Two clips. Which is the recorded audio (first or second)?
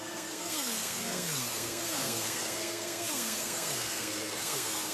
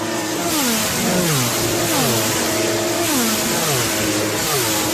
second